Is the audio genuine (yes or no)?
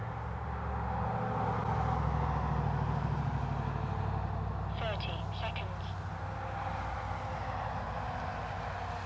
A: yes